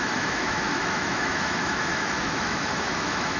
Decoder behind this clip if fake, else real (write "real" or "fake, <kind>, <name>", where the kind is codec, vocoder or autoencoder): fake, autoencoder, DAC-VAE